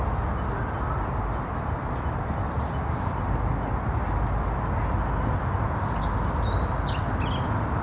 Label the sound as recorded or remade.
recorded